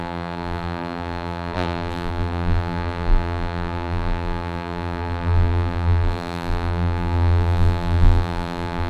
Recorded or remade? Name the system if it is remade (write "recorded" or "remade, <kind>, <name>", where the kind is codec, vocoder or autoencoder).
remade, vocoder, BigVGAN v2